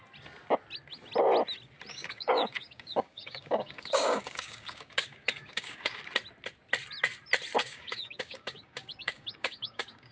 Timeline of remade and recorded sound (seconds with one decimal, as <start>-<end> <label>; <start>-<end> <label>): 0.0-1.9 recorded; 1.9-6.0 remade; 6.0-7.6 recorded; 7.6-10.1 remade

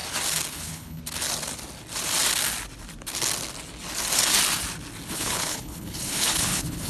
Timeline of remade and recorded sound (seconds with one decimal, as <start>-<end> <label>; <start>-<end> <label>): 0.0-0.5 recorded; 0.5-1.0 remade; 1.0-5.1 recorded; 5.1-6.9 remade